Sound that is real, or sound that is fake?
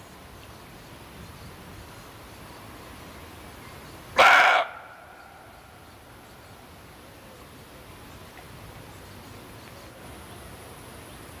real